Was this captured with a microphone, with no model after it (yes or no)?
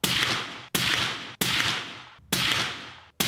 yes